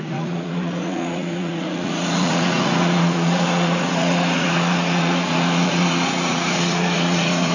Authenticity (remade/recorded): remade